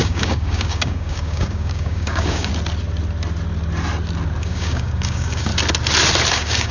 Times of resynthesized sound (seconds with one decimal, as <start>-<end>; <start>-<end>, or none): 0.0-2.5; 4.4-5.5; 6.3-6.7